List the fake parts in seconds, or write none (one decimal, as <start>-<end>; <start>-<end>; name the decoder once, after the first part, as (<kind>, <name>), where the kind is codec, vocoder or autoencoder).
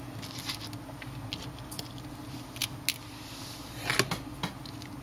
none